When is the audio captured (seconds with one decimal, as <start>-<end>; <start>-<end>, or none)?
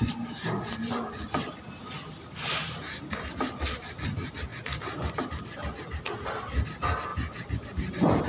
0.0-8.3